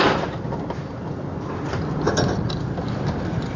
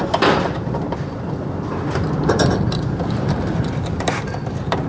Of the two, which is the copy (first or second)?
second